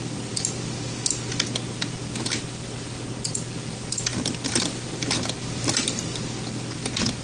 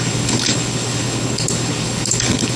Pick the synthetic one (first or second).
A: second